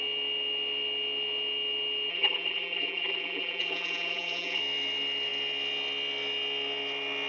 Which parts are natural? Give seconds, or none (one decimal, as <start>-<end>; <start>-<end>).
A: 0.0-2.1; 4.6-7.3